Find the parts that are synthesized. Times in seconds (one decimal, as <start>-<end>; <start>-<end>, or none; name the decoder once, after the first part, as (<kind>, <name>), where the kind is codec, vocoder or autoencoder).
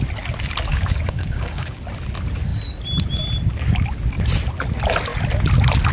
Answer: 0.7-1.8 (codec, DAC)